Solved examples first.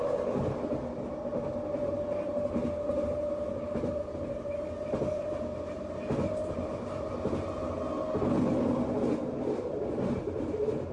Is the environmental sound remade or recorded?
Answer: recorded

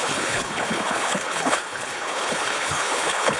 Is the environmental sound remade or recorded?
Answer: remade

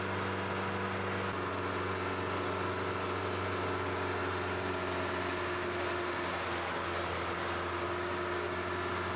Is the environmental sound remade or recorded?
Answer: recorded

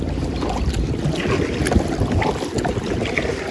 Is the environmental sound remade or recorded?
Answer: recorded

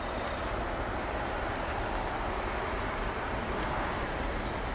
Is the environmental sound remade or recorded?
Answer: recorded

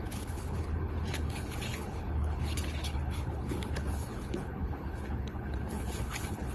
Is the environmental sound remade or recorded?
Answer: remade